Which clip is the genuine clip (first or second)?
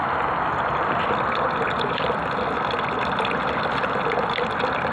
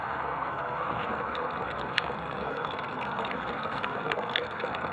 first